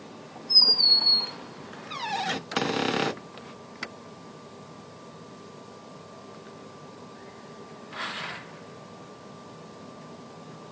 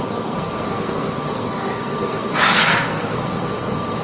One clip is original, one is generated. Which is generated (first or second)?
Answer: second